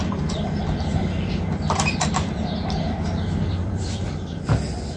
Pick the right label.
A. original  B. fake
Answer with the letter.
B